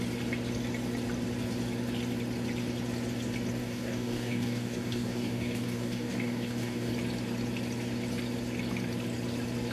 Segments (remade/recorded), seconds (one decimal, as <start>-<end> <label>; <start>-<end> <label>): 0.0-3.6 recorded; 3.6-6.9 remade; 6.9-9.7 recorded